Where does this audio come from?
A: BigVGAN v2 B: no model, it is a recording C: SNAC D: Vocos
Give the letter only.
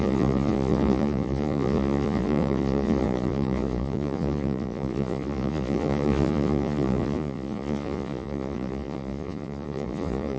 D